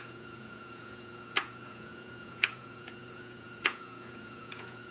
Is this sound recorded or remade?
remade